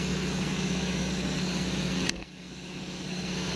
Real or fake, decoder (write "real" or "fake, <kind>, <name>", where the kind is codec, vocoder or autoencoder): fake, codec, SNAC